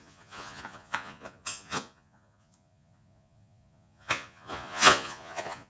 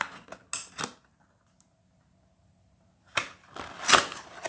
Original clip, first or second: second